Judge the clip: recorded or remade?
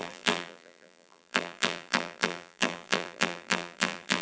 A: remade